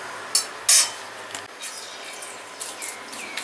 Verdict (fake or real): real